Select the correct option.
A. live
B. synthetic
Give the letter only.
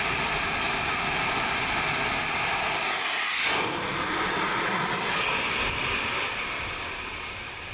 A